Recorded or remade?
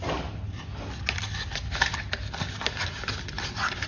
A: recorded